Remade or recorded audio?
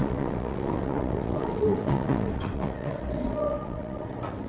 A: remade